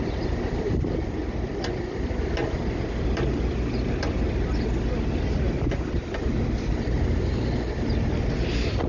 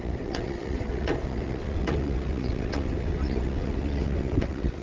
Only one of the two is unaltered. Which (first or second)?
first